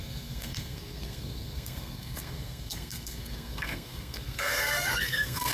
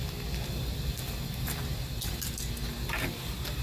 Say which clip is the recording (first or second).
second